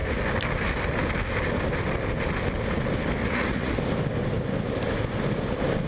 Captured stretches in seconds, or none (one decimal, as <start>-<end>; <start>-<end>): 0.0-3.2; 3.7-5.9